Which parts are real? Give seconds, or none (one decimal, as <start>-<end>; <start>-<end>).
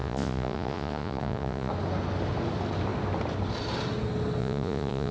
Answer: 1.7-4.4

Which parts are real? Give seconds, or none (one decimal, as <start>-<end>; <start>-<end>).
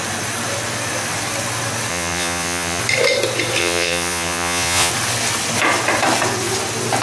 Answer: 0.0-1.9; 2.8-3.6; 4.9-7.0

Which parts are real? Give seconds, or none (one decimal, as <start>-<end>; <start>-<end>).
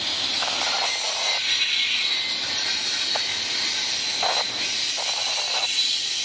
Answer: 0.0-6.2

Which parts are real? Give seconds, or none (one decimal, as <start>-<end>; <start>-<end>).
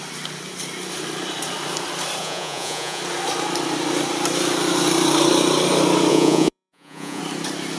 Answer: 0.0-2.2; 3.0-6.1; 7.2-7.8